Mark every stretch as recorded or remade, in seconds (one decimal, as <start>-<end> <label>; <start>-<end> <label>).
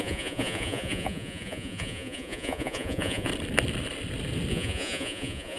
0.0-3.3 remade; 3.3-4.5 recorded; 4.5-5.6 remade